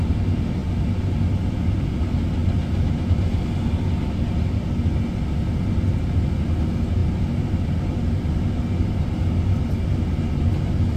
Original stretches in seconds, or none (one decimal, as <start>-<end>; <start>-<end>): 0.0-11.0